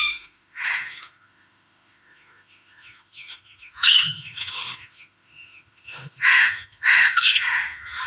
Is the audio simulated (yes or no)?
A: yes